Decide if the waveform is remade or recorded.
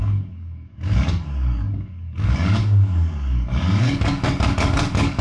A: remade